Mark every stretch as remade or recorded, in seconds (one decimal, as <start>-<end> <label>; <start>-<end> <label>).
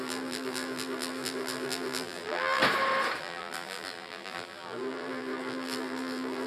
0.0-2.6 remade; 2.6-3.2 recorded; 3.2-6.5 remade